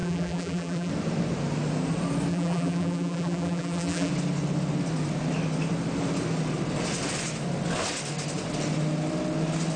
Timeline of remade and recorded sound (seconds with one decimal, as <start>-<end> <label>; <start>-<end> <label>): 0.0-0.9 remade; 0.9-2.3 recorded; 2.3-4.1 remade; 4.1-9.8 recorded